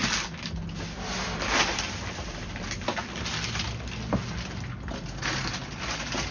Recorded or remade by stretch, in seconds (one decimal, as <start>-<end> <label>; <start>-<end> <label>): 0.0-6.3 recorded